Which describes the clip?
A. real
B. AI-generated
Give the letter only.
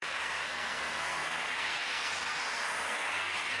B